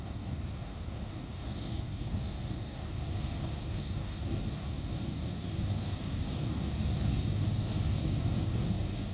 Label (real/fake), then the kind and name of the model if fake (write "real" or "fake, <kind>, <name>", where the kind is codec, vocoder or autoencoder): fake, codec, DAC